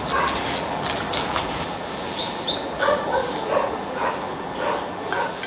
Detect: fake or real fake